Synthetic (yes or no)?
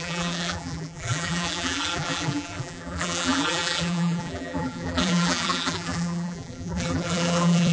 yes